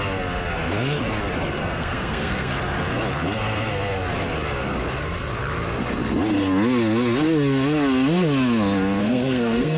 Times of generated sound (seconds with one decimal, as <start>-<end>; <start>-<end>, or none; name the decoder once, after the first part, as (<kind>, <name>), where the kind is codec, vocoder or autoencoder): 1.6-2.5 (codec, SNAC); 9.0-9.8

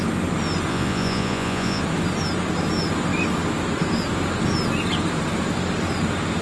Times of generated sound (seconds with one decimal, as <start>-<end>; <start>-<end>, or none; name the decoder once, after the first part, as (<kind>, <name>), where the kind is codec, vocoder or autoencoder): 0.7-1.8 (vocoder, Vocos)

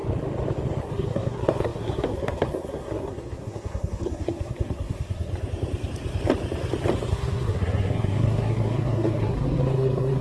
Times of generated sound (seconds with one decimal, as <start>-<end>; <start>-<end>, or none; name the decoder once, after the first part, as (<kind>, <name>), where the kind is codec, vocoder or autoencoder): 0.8-5.3 (codec, SNAC); 7.1-10.2